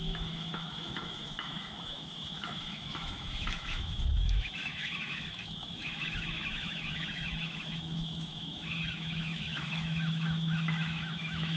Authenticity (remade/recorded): remade